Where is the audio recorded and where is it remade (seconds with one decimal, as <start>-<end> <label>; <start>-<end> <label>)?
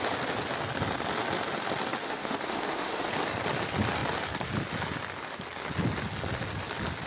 0.0-2.0 recorded; 2.0-3.1 remade; 3.1-7.1 recorded